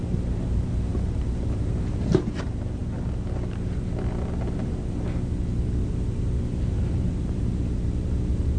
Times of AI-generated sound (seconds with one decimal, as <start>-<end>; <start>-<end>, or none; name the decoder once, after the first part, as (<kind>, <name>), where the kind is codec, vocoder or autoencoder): 0.0-2.8 (vocoder, BigVGAN v2); 6.7-8.6